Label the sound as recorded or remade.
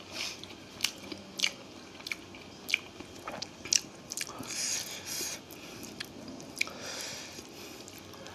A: recorded